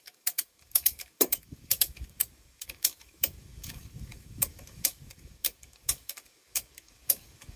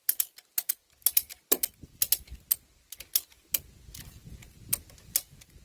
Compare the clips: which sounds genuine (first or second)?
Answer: second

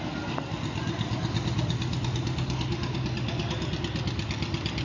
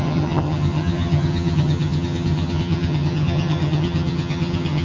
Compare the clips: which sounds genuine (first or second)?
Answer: first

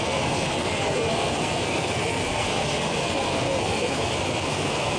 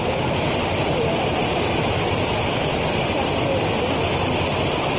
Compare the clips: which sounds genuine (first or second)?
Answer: second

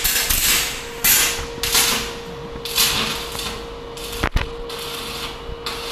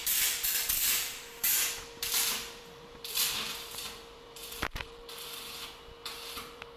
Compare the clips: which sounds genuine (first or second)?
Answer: first